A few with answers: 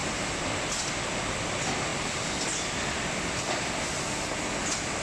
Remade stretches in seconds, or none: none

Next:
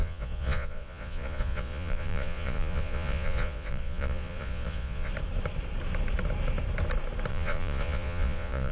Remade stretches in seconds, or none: 0.0-5.1; 7.3-8.7

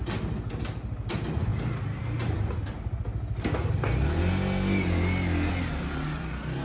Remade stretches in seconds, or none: none

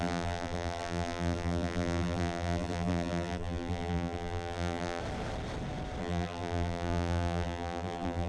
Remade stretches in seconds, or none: 0.0-5.0; 6.0-8.3

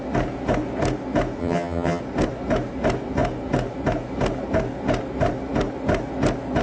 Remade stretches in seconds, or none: 1.4-2.0

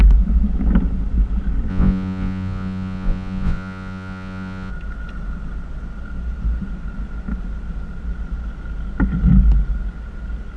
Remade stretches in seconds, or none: 1.7-4.7

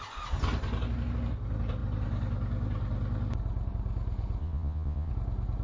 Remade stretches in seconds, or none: 4.4-5.1